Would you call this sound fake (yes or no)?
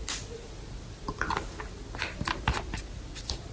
no